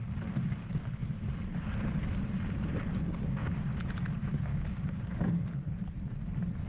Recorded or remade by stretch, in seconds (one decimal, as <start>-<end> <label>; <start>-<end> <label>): 0.0-3.4 recorded; 3.4-4.0 remade; 4.0-4.5 recorded; 4.5-5.7 remade; 5.7-6.7 recorded